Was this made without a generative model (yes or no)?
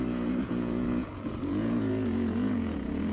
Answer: no